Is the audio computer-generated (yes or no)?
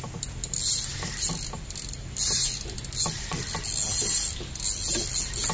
no